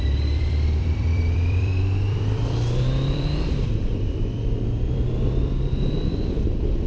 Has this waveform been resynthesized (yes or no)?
yes